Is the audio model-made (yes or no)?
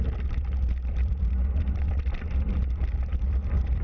yes